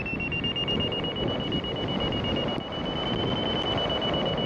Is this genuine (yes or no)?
yes